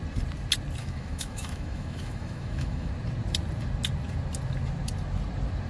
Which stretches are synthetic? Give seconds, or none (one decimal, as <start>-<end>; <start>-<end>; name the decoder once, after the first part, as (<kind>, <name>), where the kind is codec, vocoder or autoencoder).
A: 0.8-2.9 (autoencoder, DAC-VAE)